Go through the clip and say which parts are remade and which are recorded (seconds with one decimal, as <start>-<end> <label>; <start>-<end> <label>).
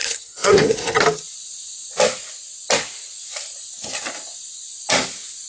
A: 0.0-1.0 remade; 1.0-5.5 recorded